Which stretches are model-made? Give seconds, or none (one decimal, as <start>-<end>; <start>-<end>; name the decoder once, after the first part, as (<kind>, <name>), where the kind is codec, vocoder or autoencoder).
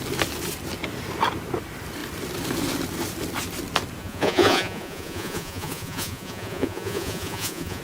4.0-7.8 (vocoder, Vocos)